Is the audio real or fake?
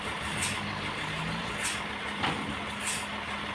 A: real